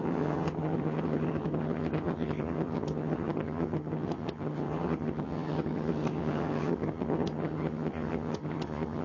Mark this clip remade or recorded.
remade